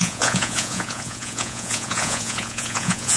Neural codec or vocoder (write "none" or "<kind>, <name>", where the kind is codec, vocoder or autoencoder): vocoder, Vocos